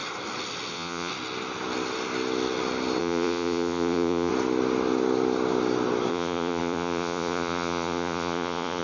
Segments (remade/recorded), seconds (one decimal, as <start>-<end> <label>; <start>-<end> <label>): 0.0-0.7 recorded; 0.7-1.1 remade; 1.1-3.0 recorded; 3.0-4.3 remade; 4.3-6.1 recorded; 6.1-8.8 remade